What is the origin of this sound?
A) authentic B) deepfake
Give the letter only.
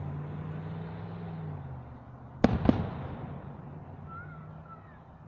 A